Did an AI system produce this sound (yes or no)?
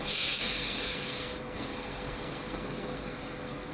yes